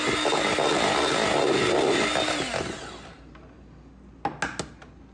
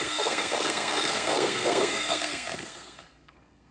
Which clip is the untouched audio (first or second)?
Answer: first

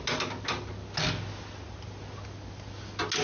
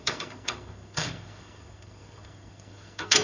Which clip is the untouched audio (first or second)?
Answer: first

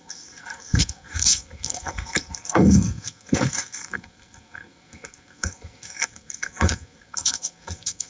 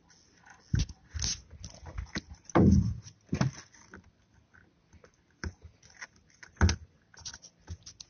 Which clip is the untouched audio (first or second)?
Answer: second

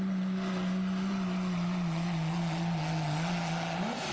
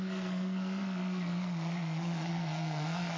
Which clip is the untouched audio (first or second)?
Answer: first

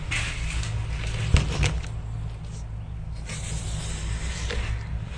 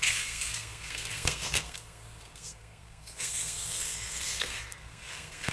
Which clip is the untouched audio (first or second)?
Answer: first